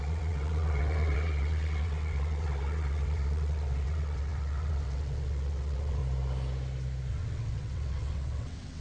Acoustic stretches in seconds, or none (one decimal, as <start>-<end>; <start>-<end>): 6.0-7.1